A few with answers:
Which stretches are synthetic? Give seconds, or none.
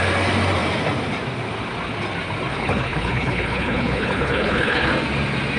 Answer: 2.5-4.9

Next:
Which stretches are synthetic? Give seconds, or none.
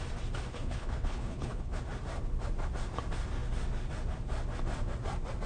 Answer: 0.5-1.8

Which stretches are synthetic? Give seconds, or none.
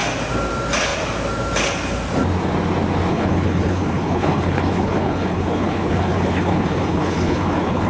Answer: 3.1-7.9